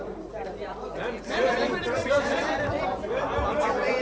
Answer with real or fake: fake